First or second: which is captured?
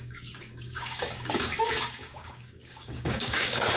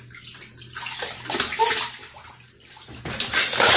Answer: second